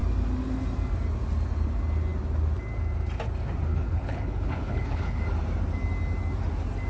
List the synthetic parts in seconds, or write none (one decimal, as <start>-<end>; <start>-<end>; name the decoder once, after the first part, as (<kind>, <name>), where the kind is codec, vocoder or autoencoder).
3.7-5.2 (codec, HILCodec)

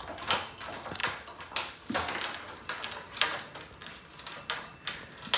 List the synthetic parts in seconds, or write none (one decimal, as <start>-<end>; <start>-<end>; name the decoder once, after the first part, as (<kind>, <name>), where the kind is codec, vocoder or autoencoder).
none

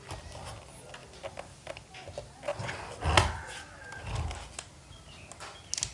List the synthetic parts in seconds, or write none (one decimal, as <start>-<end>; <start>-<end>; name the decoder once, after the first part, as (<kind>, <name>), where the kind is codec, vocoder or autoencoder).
none

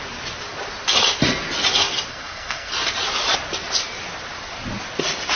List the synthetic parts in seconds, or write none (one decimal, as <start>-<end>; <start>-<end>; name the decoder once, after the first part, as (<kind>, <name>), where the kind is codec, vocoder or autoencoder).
2.1-2.7 (codec, SNAC)

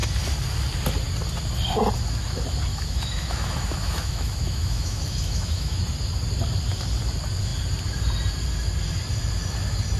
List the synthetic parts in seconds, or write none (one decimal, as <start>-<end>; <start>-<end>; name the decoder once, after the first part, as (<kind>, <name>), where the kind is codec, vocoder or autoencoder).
2.7-5.8 (autoencoder, DAC-VAE)

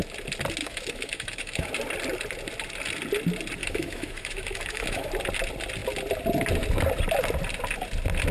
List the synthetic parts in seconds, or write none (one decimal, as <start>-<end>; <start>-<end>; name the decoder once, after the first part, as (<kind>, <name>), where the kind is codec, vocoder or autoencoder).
0.6-1.7 (autoencoder, DAC-VAE); 3.6-5.1

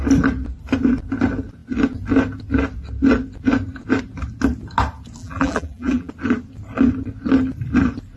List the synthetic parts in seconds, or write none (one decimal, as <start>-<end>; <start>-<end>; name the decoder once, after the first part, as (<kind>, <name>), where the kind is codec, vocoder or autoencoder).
5.2-6.1 (vocoder, BigVGAN v2)

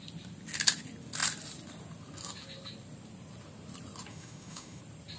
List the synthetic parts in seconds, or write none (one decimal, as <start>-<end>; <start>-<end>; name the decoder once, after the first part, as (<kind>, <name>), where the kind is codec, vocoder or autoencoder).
4.1-4.8 (autoencoder, DAC-VAE)